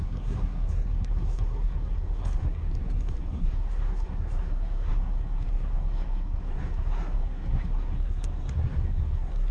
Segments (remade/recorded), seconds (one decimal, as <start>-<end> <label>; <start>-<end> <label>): 0.0-9.5 remade